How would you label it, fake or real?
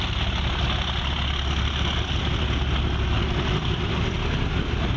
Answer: real